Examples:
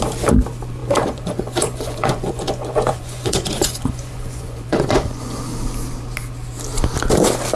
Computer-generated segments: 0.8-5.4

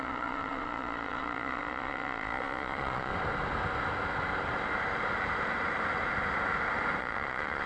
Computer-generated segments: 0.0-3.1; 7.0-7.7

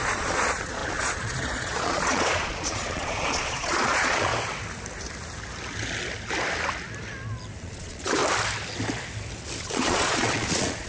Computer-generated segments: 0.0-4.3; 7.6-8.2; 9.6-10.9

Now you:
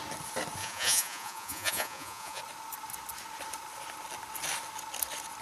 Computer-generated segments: 0.6-2.4

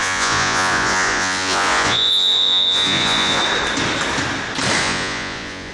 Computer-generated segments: 0.0-3.4; 4.8-5.7